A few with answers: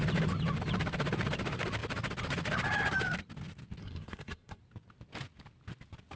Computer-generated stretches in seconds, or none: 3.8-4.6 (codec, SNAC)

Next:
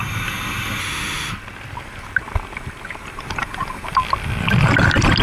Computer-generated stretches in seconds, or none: 0.8-1.3 (autoencoder, DAC-VAE)